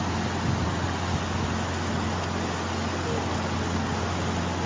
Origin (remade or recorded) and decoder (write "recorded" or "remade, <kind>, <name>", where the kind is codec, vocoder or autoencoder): recorded